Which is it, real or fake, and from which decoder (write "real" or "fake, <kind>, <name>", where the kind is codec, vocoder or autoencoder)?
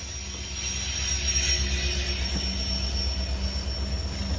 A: real